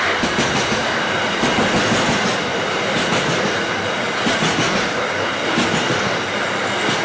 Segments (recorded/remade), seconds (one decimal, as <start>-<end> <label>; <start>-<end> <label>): 0.0-2.5 recorded; 2.5-3.7 remade; 3.7-7.0 recorded